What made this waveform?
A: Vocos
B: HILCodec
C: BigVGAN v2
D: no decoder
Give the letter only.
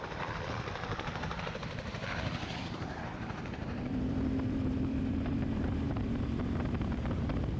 C